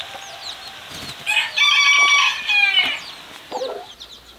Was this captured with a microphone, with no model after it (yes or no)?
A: yes